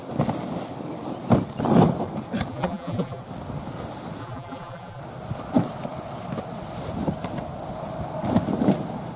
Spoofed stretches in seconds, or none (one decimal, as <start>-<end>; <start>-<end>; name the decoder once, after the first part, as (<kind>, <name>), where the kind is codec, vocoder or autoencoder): 2.5-3.2 (vocoder, BigVGAN v2); 4.2-5.0